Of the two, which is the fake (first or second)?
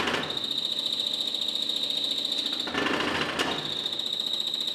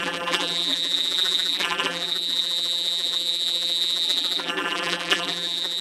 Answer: second